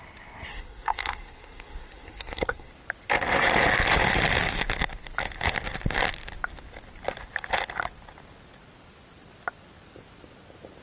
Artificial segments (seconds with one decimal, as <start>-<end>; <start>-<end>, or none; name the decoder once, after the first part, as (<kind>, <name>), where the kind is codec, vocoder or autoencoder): 0.5-2.7 (codec, SNAC)

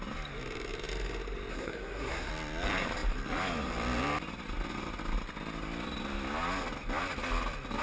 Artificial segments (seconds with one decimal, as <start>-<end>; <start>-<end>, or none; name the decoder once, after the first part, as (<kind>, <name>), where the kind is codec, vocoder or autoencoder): 1.5-2.3 (codec, SNAC)